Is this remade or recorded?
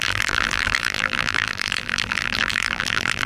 remade